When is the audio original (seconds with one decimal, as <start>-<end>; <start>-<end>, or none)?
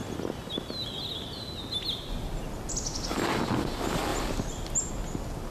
0.0-5.5